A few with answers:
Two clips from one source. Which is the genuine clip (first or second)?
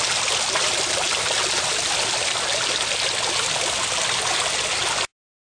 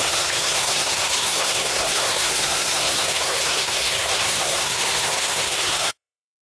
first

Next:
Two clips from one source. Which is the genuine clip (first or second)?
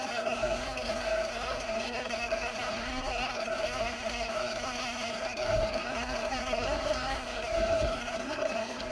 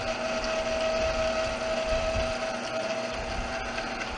second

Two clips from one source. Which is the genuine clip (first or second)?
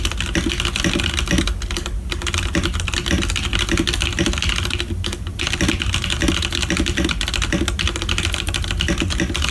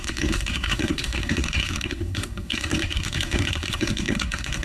first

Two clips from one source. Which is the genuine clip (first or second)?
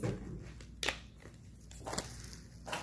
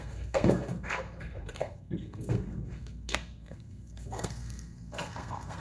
first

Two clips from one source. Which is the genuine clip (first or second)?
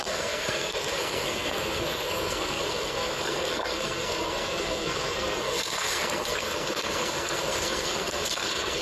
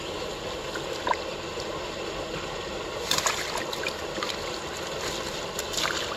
second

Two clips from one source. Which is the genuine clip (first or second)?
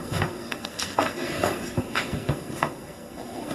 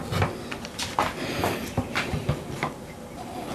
second